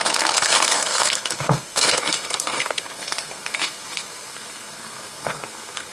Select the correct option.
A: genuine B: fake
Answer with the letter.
B